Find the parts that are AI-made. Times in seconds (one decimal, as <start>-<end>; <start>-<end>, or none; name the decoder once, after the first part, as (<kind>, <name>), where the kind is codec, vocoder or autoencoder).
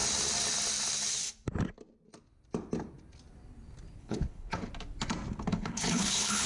4.0-4.7 (codec, HILCodec); 5.5-6.5